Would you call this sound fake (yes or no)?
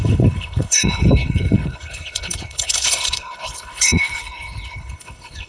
yes